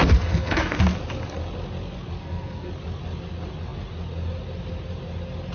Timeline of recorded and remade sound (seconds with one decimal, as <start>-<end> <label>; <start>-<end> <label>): 0.0-0.8 remade; 0.8-2.2 recorded; 2.2-2.7 remade; 2.7-5.5 recorded